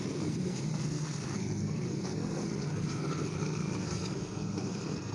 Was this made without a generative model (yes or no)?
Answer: no